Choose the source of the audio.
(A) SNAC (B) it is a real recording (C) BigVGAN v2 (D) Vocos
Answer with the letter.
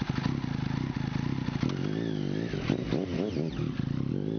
B